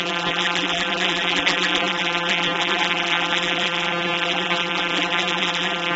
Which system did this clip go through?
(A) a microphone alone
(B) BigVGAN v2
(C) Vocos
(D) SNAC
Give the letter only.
B